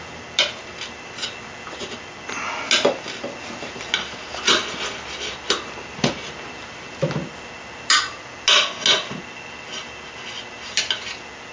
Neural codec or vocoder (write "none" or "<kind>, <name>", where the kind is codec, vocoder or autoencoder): none